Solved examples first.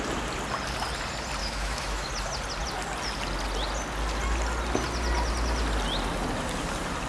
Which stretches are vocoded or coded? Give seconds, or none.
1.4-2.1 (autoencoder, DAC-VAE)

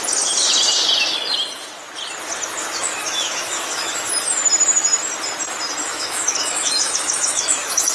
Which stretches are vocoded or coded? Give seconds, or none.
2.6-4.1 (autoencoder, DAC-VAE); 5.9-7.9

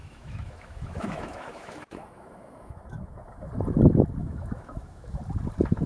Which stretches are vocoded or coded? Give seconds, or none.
0.0-3.5 (autoencoder, DAC-VAE); 4.2-5.2